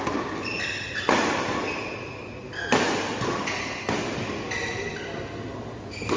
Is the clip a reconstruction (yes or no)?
no